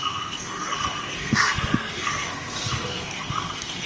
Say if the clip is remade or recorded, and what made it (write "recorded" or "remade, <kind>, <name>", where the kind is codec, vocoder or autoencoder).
remade, codec, SNAC